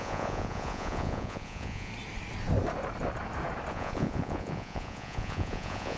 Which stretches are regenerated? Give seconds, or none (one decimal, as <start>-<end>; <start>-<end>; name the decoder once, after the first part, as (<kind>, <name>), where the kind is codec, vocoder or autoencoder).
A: 0.0-1.9 (vocoder, Vocos); 3.7-6.0